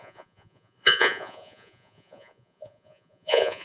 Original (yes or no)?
no